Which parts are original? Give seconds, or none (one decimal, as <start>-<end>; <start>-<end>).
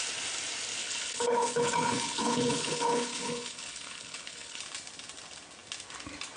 0.0-0.8; 4.6-6.4